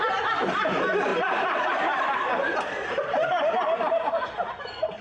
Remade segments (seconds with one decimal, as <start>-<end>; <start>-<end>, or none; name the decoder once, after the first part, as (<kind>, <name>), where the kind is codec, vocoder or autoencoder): 1.1-4.1 (vocoder, BigVGAN v2)